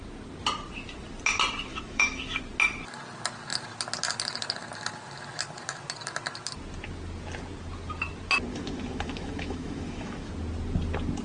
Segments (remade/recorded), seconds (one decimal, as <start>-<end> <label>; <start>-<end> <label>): 0.0-1.7 recorded; 1.7-2.4 remade; 2.4-8.5 recorded; 8.5-10.3 remade; 10.3-11.2 recorded

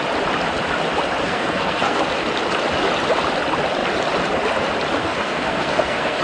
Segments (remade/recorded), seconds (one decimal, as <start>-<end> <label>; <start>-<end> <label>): 0.0-1.2 recorded; 1.2-2.0 remade; 2.0-5.0 recorded; 5.0-6.2 remade